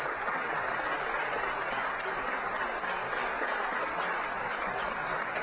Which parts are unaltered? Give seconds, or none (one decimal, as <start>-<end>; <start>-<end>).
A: 0.0-5.4